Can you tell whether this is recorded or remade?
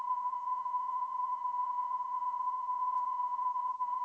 remade